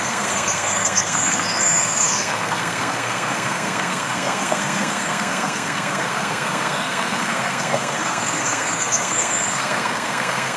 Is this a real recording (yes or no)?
no